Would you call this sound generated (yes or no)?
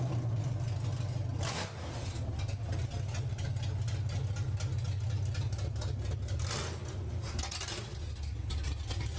no